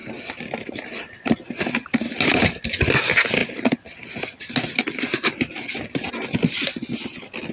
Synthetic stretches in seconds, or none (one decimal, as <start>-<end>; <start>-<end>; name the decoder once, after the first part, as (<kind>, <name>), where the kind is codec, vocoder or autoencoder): 0.0-2.9 (vocoder, BigVGAN v2); 3.4-6.1